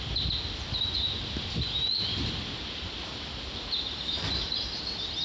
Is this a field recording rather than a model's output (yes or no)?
yes